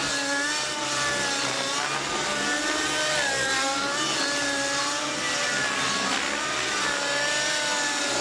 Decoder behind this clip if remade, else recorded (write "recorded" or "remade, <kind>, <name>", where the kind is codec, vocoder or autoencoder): recorded